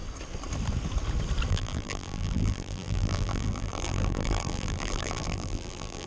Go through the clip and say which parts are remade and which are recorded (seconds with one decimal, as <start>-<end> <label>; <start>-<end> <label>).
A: 0.0-1.5 recorded; 1.5-6.1 remade